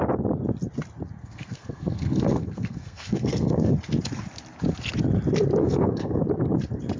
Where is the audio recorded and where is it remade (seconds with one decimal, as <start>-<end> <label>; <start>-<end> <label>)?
0.0-1.2 recorded; 1.2-3.7 remade; 3.7-5.6 recorded; 5.6-6.2 remade; 6.2-7.0 recorded